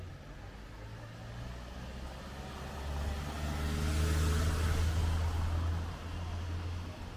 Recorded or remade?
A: recorded